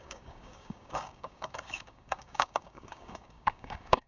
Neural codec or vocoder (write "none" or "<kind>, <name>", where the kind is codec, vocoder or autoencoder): codec, DAC